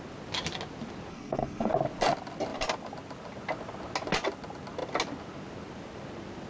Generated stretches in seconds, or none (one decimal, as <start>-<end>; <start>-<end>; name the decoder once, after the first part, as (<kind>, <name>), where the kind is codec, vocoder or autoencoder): 1.1-1.7 (codec, SNAC)